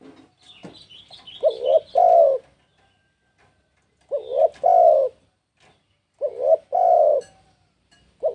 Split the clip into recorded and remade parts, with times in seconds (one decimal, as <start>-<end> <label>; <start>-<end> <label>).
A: 0.0-8.3 recorded